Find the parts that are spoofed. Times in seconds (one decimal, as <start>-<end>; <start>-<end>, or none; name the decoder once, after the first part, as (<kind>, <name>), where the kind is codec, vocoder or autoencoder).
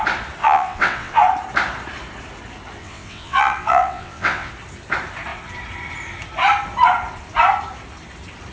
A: 0.4-1.2 (vocoder, WaveNeXt); 2.8-4.5